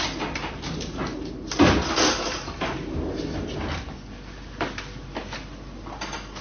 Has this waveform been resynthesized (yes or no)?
no